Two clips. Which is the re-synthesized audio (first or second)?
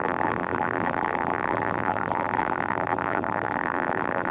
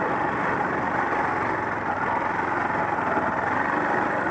first